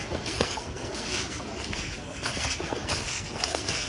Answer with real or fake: fake